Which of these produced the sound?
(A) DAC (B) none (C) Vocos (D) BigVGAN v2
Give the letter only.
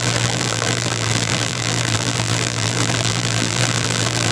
D